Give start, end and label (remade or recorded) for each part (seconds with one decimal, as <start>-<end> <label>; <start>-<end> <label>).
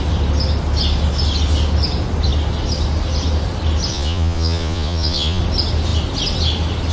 0.0-3.9 recorded; 3.9-5.4 remade; 5.4-6.9 recorded